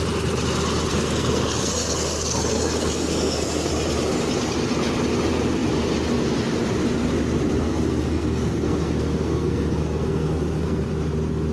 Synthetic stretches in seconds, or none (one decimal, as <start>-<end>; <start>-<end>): 0.9-3.7; 7.6-10.9